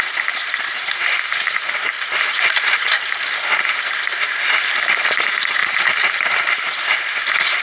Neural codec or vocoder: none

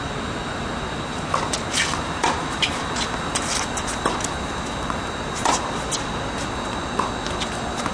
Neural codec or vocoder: none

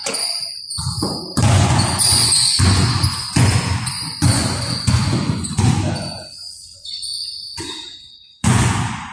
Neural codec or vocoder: vocoder, Vocos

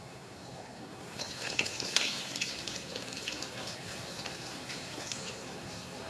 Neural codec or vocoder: codec, SNAC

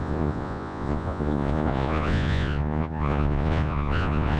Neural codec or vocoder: vocoder, Vocos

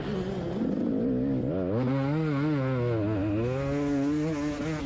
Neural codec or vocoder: none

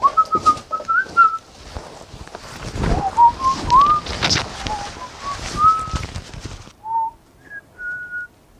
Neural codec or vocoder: none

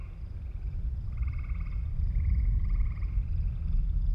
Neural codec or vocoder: none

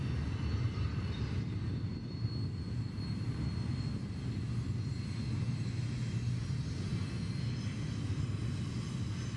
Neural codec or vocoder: none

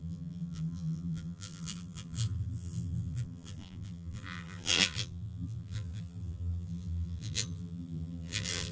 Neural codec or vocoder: vocoder, BigVGAN v2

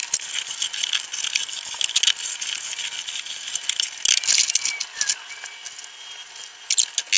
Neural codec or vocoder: none